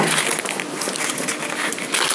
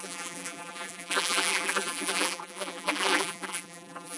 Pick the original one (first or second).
first